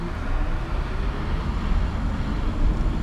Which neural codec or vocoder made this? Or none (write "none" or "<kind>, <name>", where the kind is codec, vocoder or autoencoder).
none